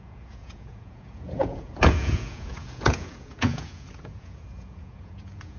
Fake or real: fake